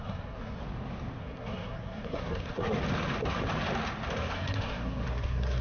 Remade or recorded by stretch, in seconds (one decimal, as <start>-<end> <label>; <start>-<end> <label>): 0.0-0.6 remade; 0.6-1.2 recorded; 1.2-2.8 remade; 2.8-4.1 recorded; 4.1-5.6 remade

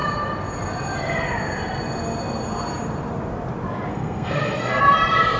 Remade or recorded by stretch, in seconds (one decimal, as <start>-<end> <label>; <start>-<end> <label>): 0.0-3.9 recorded; 3.9-4.8 remade; 4.8-5.4 recorded

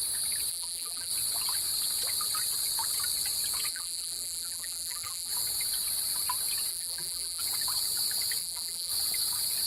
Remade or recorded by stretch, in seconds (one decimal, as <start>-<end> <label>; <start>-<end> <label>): 0.0-0.5 recorded; 0.5-1.1 remade; 1.1-3.7 recorded; 3.7-5.3 remade; 5.3-6.7 recorded; 6.7-7.4 remade; 7.4-8.4 recorded; 8.4-8.9 remade; 8.9-9.7 recorded

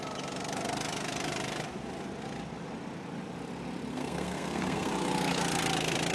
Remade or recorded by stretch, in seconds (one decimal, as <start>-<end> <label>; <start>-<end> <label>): 0.0-3.9 recorded; 3.9-4.9 remade; 4.9-6.1 recorded

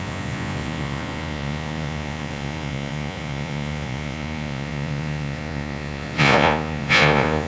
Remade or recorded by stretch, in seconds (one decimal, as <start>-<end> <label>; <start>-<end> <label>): 0.0-7.5 remade

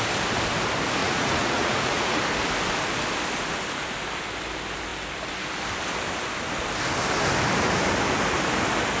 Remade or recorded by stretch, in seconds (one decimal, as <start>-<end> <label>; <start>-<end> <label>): 0.0-1.0 recorded; 1.0-2.2 remade; 2.2-9.0 recorded

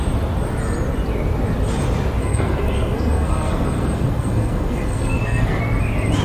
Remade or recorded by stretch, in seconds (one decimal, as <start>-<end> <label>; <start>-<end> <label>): 0.0-2.2 recorded; 2.2-5.6 remade; 5.6-6.2 recorded